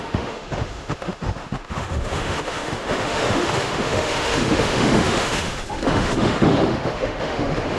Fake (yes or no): yes